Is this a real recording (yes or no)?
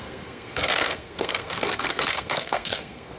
no